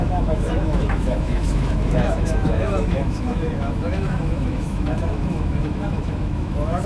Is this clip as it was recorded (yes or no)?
no